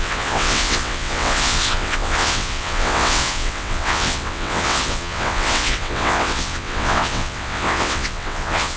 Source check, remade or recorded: remade